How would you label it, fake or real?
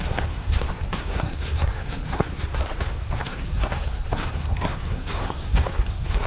fake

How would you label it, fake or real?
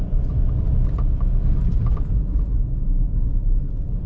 real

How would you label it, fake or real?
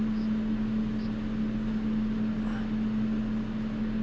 real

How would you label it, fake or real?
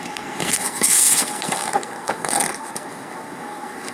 fake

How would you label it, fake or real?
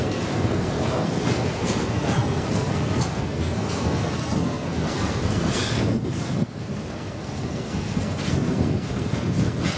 fake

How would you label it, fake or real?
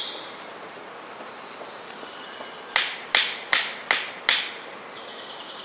real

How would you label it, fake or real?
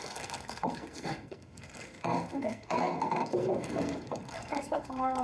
fake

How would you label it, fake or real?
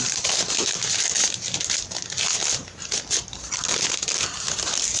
real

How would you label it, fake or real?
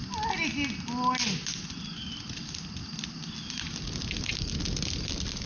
real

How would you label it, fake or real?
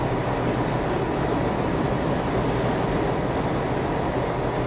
real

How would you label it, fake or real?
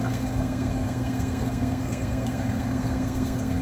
fake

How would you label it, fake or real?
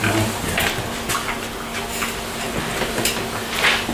real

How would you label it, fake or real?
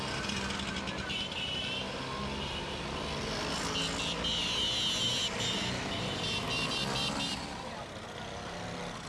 real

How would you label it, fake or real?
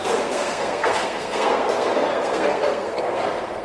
fake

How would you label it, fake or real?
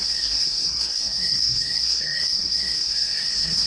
fake